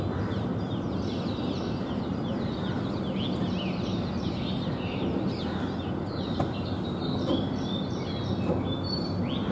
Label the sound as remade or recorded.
recorded